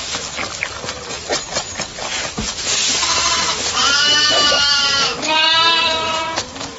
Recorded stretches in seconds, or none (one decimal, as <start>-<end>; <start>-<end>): 0.0-3.8